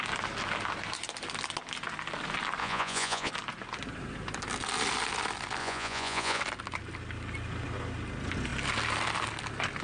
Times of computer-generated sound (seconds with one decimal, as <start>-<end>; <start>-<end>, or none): 2.6-3.3; 5.6-6.4